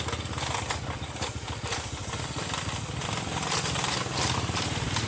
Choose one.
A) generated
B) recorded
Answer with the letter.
B